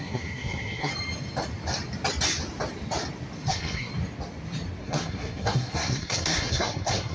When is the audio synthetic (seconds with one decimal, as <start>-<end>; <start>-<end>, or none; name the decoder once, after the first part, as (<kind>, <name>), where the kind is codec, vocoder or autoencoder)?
0.0-0.9 (codec, SNAC); 3.5-3.9; 4.8-7.1